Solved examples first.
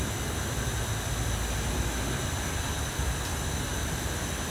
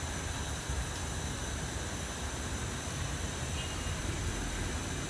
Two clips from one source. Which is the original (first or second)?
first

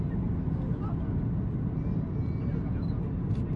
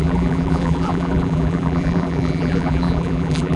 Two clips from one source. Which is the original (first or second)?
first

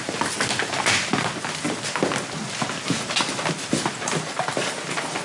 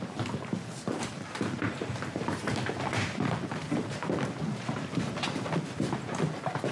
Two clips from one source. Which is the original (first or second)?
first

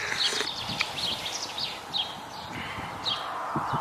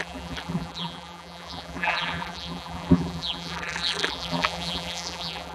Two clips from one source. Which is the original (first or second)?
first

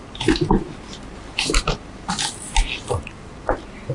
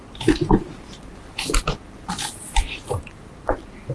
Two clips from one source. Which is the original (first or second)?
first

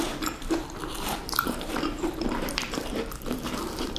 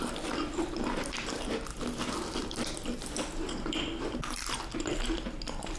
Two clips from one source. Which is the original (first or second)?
second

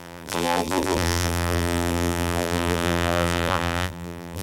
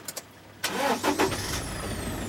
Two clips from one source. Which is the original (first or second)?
second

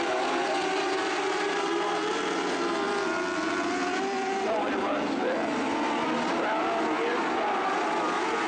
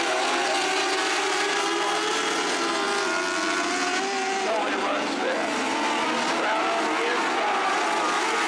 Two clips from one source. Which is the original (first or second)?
second